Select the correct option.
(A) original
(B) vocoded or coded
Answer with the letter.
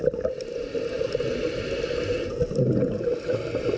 A